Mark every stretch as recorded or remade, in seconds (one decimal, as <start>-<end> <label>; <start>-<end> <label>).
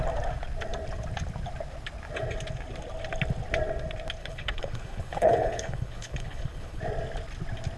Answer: 0.0-4.2 recorded; 4.2-6.8 remade; 6.8-7.8 recorded